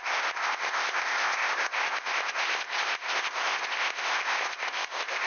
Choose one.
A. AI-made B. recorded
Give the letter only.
A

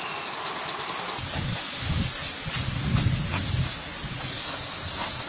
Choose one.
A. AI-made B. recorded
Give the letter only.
B